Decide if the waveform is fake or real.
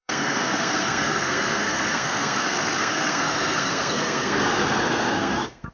fake